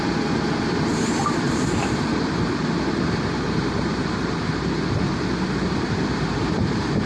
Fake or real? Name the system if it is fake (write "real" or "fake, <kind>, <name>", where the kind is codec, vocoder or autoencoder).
fake, vocoder, BigVGAN v2